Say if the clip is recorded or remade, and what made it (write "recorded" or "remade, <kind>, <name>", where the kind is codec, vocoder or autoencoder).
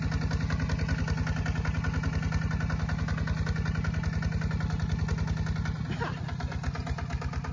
recorded